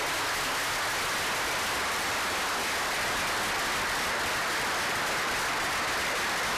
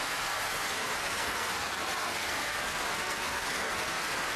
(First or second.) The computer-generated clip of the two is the second